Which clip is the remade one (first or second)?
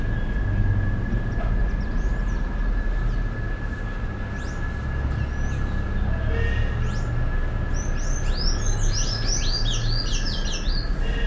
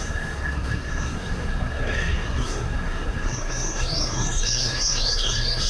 second